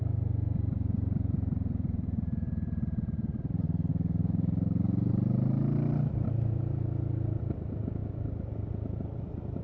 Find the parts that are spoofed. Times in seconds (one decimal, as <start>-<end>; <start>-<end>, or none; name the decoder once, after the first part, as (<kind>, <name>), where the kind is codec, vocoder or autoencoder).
3.9-5.1 (codec, DAC)